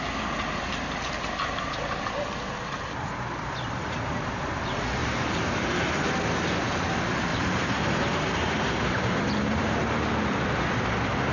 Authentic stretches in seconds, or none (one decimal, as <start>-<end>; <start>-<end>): 0.0-5.0; 5.6-7.3; 9.8-11.3